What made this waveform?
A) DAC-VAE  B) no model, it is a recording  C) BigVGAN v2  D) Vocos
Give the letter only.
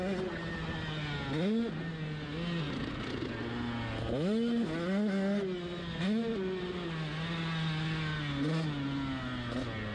B